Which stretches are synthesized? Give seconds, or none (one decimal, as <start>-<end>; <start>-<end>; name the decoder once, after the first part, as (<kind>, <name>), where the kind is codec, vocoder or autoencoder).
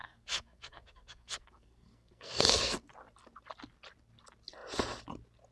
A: 0.0-2.9 (codec, SNAC)